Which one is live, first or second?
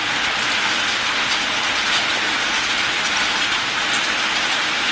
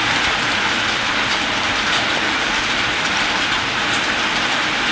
first